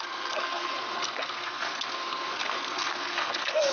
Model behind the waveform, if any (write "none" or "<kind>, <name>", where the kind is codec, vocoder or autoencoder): codec, SNAC